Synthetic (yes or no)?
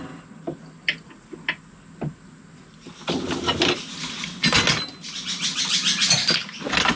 no